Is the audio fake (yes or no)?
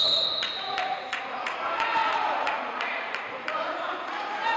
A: yes